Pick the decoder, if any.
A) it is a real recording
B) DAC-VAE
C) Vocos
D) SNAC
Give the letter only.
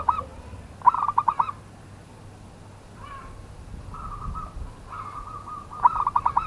A